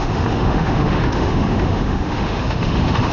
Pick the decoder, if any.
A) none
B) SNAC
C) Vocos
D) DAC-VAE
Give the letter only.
D